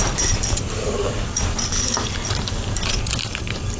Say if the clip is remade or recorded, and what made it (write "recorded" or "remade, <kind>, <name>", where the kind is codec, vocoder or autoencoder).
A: remade, vocoder, BigVGAN v2